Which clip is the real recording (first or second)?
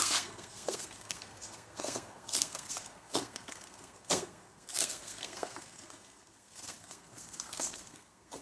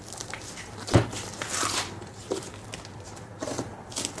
second